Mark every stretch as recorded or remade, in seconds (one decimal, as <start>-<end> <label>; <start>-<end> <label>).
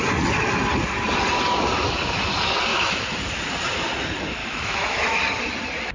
0.0-2.7 recorded; 2.7-3.2 remade; 3.2-4.4 recorded; 4.4-5.2 remade; 5.2-5.9 recorded